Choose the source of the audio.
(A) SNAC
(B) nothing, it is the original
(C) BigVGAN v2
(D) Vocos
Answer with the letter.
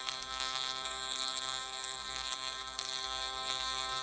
A